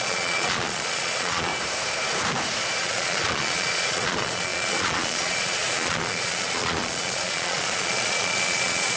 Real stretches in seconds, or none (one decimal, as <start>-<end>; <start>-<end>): 1.5-2.8